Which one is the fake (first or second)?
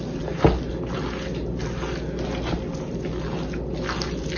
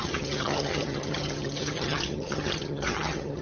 second